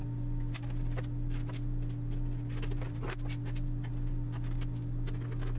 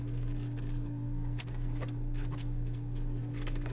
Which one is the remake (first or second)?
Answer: second